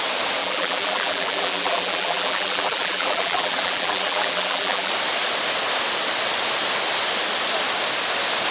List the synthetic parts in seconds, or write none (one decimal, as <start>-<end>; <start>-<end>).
0.4-4.9